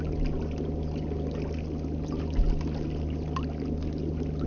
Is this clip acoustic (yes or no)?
yes